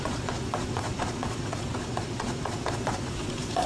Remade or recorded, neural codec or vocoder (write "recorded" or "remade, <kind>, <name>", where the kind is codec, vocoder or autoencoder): remade, vocoder, Vocos